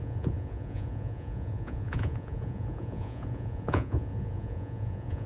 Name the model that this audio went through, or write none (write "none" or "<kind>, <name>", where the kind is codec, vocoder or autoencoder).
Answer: vocoder, Vocos